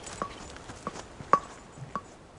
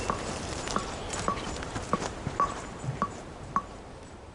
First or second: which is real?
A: first